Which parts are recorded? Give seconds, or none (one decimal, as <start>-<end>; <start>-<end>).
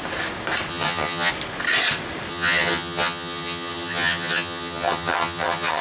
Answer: 0.0-0.7; 1.3-2.3